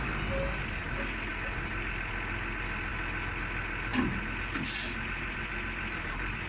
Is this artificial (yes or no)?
no